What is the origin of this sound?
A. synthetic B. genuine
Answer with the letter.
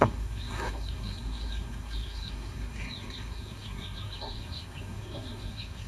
A